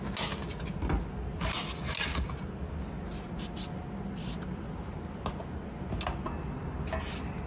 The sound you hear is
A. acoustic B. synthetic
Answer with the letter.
A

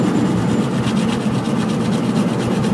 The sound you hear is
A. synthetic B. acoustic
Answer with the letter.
B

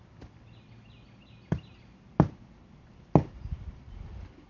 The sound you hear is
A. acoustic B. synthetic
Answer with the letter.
A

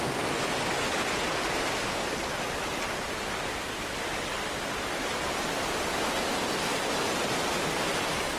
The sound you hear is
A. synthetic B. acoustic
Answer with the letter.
B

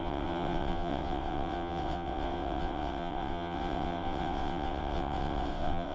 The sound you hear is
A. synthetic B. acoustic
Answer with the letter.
A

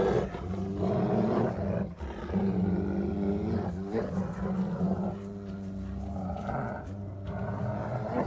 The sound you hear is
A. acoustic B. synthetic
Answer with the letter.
A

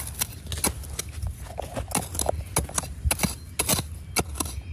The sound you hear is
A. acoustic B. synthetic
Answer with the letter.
A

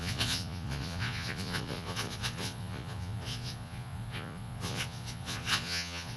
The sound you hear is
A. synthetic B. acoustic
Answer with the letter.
A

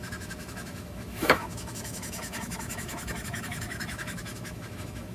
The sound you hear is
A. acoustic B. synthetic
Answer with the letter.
B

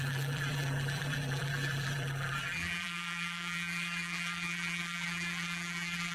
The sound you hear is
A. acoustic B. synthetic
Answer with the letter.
B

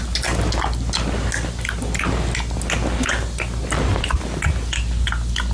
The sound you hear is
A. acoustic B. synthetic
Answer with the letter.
A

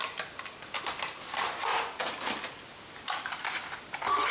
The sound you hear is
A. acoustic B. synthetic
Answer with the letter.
A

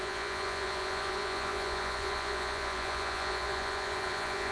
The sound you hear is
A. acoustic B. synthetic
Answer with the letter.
B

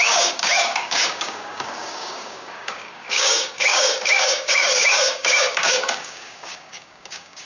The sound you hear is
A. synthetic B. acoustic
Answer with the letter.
A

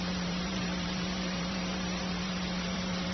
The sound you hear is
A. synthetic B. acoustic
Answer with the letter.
A